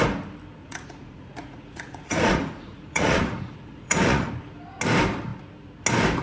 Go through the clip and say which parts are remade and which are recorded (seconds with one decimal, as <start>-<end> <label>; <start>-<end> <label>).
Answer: 0.0-0.6 recorded; 0.6-4.3 remade; 4.3-6.2 recorded